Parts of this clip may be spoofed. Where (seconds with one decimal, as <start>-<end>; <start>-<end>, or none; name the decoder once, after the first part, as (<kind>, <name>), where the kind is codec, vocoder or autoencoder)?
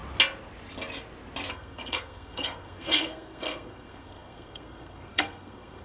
1.5-5.8 (codec, SNAC)